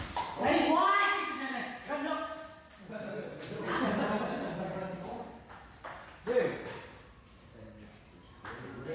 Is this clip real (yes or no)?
yes